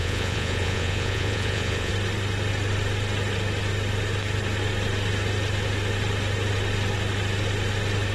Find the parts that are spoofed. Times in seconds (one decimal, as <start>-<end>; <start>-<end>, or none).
0.0-1.9